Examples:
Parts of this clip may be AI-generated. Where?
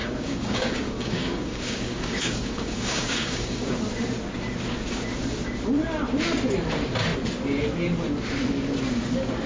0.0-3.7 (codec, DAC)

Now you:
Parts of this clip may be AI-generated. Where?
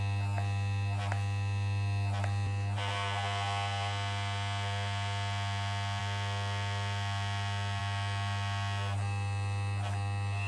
none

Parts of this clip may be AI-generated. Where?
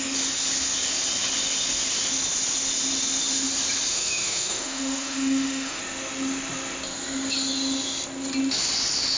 3.9-5.8 (autoencoder, DAC-VAE)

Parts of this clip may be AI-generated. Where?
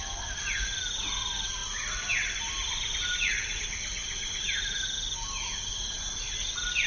none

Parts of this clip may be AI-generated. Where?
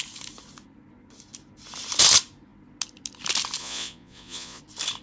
3.6-4.6 (vocoder, Vocos)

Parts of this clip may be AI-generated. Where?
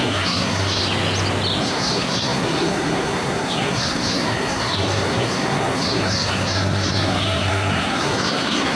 0.0-0.8 (codec, SNAC); 1.6-8.8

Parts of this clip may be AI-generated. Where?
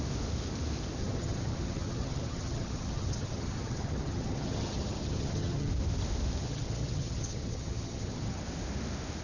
1.0-5.7 (vocoder, HiFi-GAN); 6.4-8.4